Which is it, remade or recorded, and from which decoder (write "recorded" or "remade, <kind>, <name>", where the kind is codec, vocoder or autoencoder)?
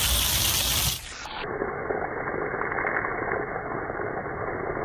recorded